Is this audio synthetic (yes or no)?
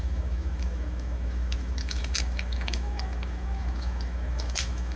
yes